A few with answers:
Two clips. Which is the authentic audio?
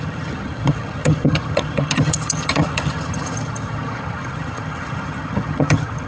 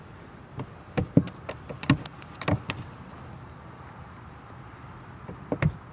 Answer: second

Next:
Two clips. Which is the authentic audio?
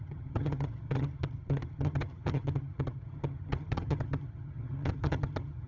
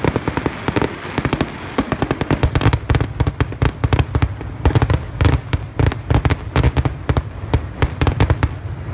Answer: second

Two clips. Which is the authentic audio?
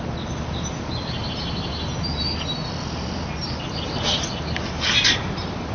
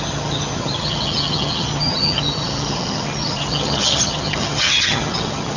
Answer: first